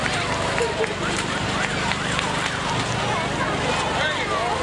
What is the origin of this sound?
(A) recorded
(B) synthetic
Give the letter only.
A